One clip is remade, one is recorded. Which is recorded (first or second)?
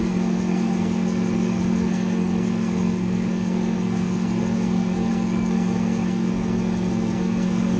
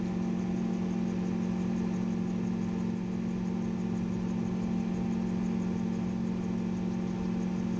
second